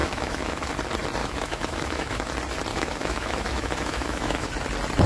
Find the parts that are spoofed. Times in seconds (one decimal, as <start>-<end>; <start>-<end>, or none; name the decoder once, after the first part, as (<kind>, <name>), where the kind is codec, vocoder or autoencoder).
0.0-0.7 (autoencoder, DAC-VAE); 1.2-2.3; 2.7-4.5